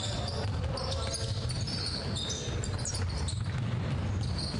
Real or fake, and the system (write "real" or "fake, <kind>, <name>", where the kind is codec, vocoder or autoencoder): real